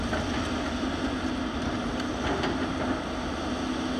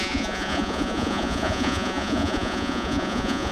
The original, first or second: first